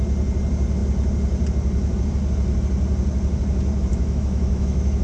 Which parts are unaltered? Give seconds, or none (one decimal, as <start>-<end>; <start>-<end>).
0.0-3.9